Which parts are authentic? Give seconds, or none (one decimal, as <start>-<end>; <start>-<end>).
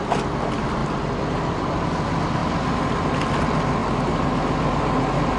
0.0-5.4